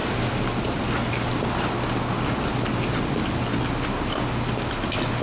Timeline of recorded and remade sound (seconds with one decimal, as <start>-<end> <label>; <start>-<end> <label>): 0.0-5.2 recorded